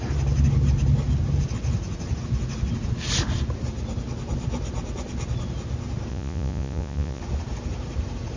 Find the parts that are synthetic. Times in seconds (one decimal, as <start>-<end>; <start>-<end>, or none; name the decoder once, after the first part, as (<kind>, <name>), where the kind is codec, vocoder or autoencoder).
6.1-7.2 (vocoder, Vocos)